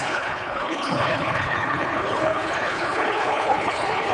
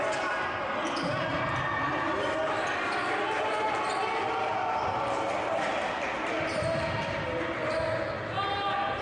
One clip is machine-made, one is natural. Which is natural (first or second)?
second